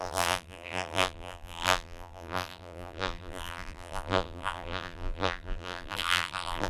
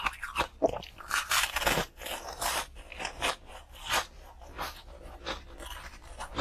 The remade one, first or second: first